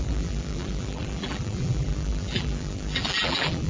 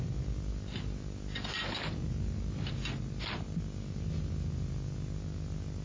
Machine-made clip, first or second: first